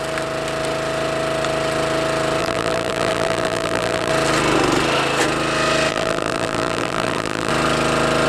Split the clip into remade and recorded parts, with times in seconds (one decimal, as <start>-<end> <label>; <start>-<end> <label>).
0.0-2.4 recorded; 2.4-4.1 remade; 4.1-5.9 recorded; 5.9-7.5 remade; 7.5-8.3 recorded